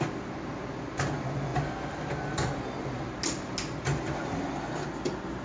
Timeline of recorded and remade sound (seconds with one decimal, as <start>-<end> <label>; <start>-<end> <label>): 0.0-5.4 recorded